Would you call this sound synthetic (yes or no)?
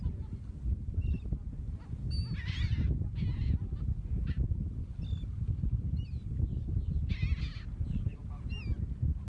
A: no